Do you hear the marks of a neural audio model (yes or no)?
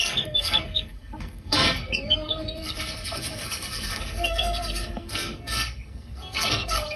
yes